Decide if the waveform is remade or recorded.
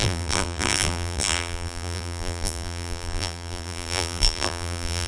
remade